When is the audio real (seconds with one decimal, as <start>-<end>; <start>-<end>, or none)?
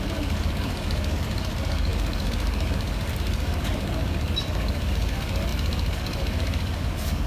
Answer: none